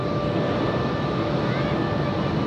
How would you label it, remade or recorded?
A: recorded